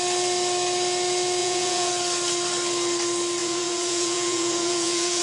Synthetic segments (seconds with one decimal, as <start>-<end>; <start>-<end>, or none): 1.4-1.9; 3.4-5.2